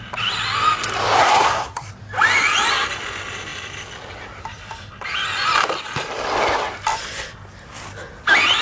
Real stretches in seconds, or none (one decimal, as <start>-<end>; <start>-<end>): 0.0-1.2; 1.9-8.6